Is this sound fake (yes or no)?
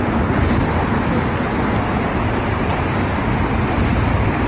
no